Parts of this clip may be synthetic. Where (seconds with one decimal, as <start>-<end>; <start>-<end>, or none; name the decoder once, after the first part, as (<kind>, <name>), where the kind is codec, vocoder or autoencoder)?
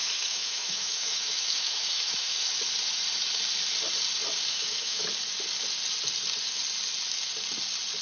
0.0-2.5 (autoencoder, DAC-VAE); 4.5-5.0